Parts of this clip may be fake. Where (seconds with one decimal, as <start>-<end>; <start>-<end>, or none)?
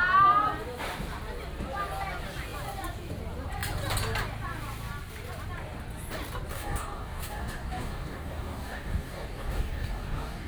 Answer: 6.5-10.5